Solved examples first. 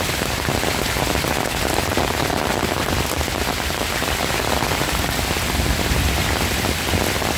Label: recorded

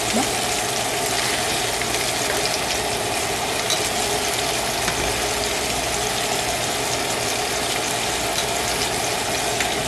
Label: recorded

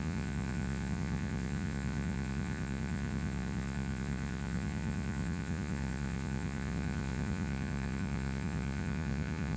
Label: remade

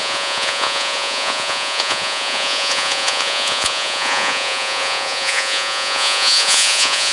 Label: remade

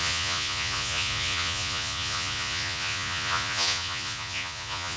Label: remade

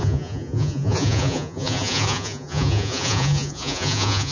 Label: remade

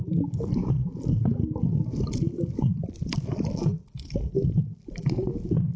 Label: recorded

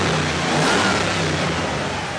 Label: recorded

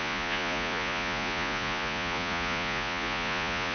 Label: remade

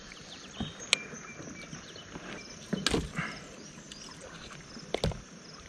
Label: recorded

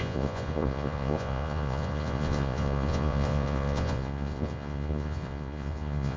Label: remade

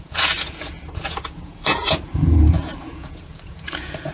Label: remade